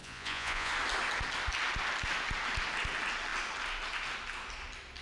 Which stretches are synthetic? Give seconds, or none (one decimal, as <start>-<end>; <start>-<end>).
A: 0.0-0.7